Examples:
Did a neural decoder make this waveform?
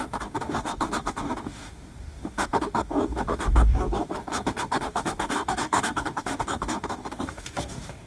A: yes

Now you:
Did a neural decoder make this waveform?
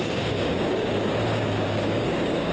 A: yes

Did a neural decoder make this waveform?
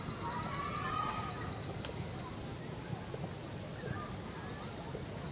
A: no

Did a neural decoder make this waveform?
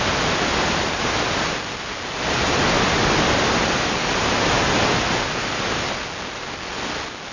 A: no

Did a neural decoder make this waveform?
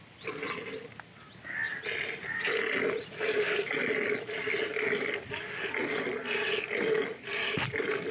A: no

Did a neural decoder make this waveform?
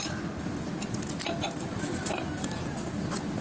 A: no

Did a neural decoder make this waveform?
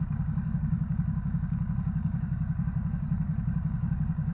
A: yes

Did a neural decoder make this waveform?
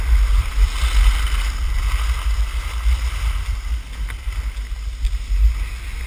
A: no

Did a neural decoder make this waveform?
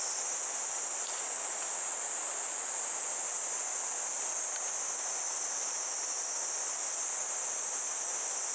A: no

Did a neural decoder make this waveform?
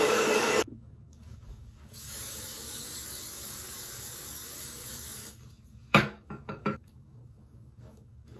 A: yes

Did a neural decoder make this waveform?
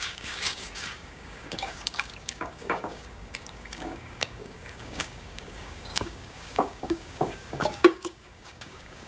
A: yes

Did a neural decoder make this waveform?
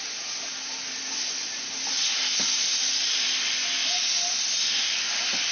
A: no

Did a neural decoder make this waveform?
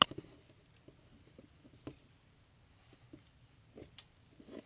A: no